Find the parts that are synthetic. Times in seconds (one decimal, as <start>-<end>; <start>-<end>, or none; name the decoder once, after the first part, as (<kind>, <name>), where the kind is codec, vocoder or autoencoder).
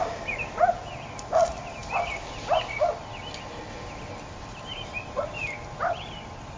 none